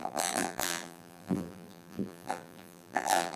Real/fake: fake